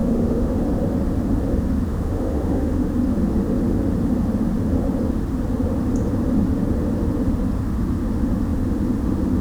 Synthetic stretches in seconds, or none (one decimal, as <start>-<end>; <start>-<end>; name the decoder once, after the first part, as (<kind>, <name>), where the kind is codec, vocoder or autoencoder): 0.0-0.6 (autoencoder, DAC-VAE); 1.9-2.9